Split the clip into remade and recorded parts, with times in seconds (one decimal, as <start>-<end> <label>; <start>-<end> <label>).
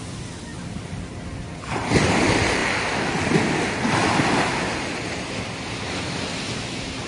0.0-7.1 recorded